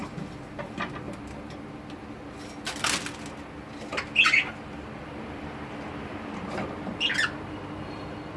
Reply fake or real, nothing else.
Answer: real